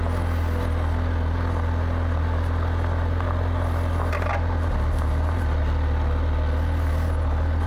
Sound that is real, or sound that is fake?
real